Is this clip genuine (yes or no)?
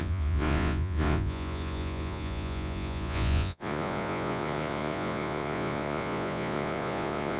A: no